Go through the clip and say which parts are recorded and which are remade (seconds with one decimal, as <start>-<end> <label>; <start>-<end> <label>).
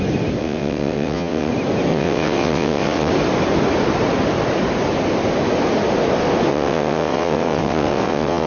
0.0-0.4 recorded; 0.4-1.5 remade; 1.5-1.9 recorded; 1.9-3.1 remade; 3.1-6.5 recorded; 6.5-8.5 remade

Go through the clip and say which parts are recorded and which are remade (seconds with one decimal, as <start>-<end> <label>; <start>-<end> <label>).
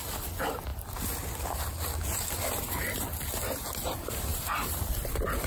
0.0-5.5 recorded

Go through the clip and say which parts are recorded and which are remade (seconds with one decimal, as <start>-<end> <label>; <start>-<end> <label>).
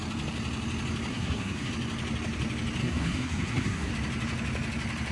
0.0-1.1 recorded; 1.1-1.7 remade; 1.7-2.8 recorded; 2.8-3.9 remade; 3.9-5.1 recorded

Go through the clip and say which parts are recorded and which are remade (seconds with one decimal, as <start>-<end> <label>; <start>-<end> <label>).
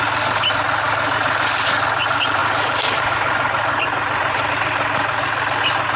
0.0-2.4 recorded; 2.4-4.5 remade; 4.5-6.0 recorded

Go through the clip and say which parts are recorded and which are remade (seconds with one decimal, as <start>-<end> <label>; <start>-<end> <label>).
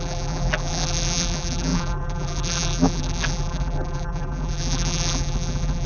0.0-5.9 remade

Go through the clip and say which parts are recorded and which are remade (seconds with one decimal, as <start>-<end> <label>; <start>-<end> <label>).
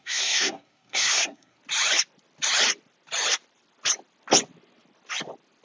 0.0-1.6 remade; 1.6-5.6 recorded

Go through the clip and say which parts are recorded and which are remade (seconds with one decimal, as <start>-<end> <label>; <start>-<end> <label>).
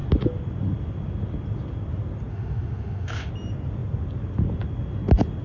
0.0-2.3 recorded; 2.3-3.3 remade; 3.3-5.4 recorded